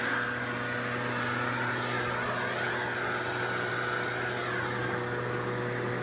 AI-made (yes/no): no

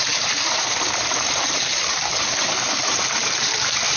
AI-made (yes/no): yes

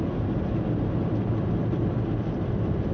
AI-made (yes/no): no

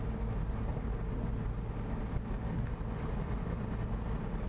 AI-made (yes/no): no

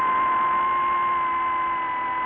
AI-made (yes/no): no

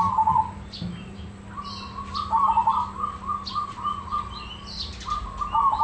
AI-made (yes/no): no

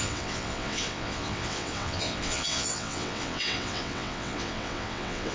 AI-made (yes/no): yes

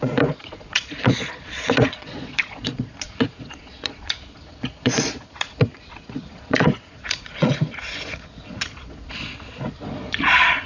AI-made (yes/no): yes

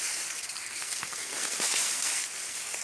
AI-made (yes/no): yes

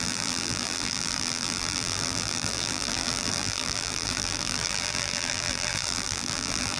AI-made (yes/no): yes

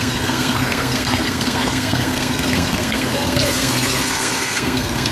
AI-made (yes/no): yes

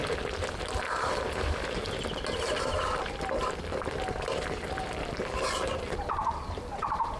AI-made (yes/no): no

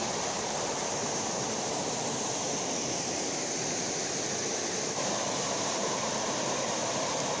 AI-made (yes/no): yes